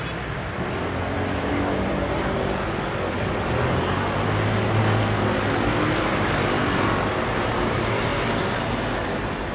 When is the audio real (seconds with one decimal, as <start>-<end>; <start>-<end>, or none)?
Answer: 0.0-0.4; 1.5-8.1; 8.6-9.5